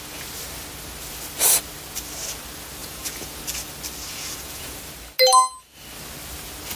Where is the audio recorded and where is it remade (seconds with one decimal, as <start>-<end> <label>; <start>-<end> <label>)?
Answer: 0.0-2.8 recorded; 2.8-3.4 remade; 3.4-4.1 recorded; 4.1-4.8 remade; 4.8-6.8 recorded